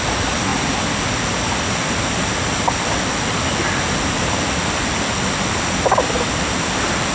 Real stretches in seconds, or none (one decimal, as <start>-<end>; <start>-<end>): 0.0-7.1